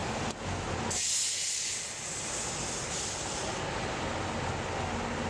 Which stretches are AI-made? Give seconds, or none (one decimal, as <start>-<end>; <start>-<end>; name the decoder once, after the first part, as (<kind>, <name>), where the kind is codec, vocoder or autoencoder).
none